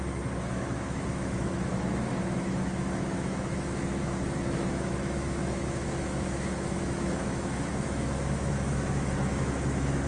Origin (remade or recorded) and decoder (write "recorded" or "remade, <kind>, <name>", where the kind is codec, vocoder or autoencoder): remade, autoencoder, DAC-VAE